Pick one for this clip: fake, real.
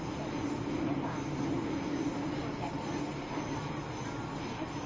real